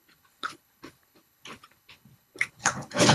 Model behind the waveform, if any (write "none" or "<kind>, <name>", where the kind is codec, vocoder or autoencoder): codec, HILCodec